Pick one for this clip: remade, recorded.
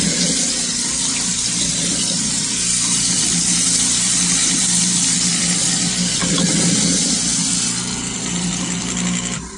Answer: recorded